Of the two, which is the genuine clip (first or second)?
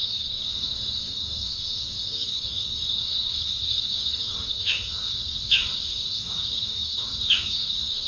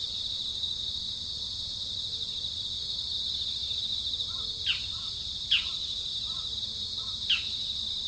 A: second